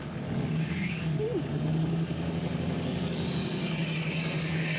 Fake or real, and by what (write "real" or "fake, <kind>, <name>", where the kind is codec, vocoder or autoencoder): fake, codec, DAC